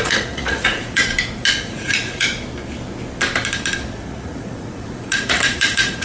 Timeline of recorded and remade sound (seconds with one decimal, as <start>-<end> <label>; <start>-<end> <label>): 0.0-1.0 remade; 1.0-1.6 recorded; 1.6-2.3 remade; 2.3-3.9 recorded; 3.9-6.0 remade